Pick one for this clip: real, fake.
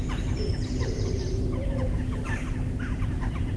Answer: real